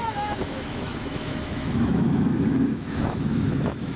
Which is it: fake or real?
fake